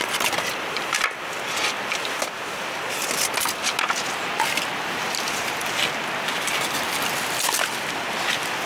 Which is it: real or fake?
real